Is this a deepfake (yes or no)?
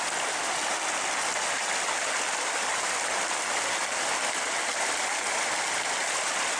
no